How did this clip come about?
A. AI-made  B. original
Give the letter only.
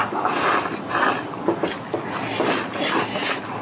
B